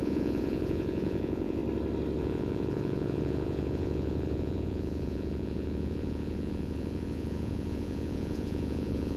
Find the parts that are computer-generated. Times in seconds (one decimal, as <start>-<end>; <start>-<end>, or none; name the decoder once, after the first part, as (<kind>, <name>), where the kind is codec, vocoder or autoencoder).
0.0-1.6 (vocoder, Vocos); 2.2-9.2